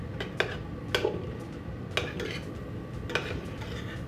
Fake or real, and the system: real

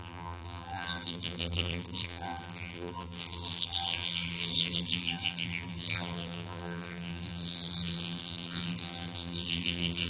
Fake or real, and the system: fake, vocoder, BigVGAN v2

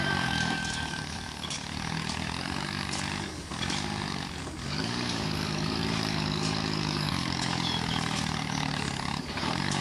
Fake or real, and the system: fake, codec, DAC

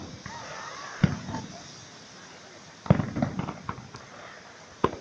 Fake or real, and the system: real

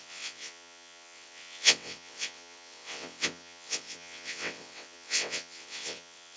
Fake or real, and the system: fake, vocoder, WaveNeXt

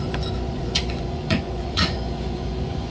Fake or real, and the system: fake, vocoder, Vocos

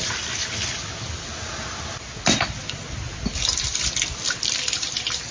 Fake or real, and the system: real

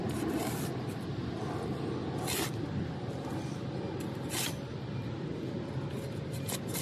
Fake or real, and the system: real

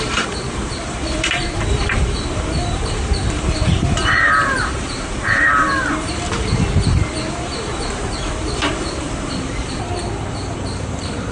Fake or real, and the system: fake, vocoder, BigVGAN v2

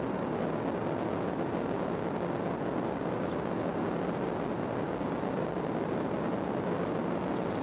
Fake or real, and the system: real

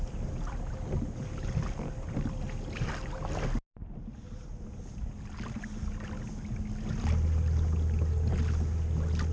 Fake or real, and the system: real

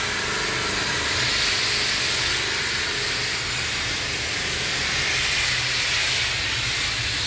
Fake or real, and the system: real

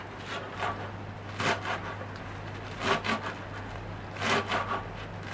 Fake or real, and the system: real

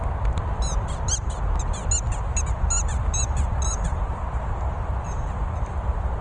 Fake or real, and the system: real